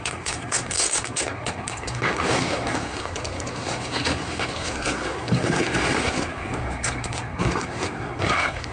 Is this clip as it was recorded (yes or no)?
no